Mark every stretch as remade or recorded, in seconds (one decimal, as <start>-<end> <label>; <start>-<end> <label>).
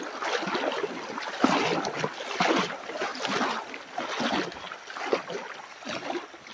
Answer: 0.0-6.5 recorded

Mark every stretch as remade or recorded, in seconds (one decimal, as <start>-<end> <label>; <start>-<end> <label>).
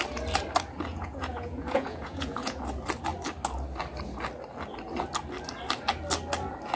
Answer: 0.0-0.9 recorded; 0.9-2.6 remade; 2.6-6.8 recorded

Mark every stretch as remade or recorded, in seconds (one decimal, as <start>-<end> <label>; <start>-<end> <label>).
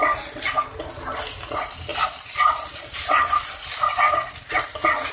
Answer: 0.0-5.1 recorded